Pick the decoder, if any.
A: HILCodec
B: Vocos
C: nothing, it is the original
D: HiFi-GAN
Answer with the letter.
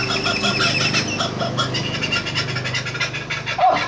C